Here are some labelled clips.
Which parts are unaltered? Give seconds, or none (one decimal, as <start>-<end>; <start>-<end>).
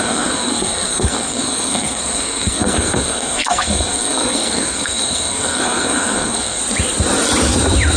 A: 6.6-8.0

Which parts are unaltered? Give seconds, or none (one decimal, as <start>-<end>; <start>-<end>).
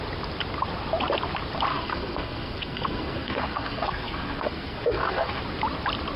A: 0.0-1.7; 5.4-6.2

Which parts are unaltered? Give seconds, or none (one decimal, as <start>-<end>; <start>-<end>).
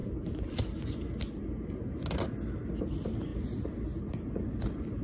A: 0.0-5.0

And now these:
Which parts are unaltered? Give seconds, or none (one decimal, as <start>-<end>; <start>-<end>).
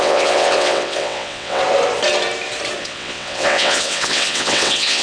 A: 1.6-2.8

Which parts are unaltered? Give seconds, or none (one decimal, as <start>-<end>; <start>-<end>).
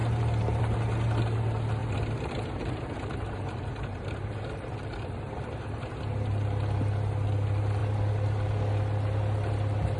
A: 0.0-1.8; 6.0-10.0